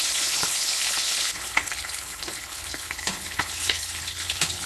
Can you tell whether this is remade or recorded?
remade